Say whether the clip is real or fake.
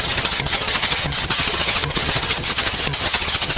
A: fake